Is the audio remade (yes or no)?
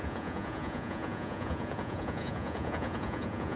yes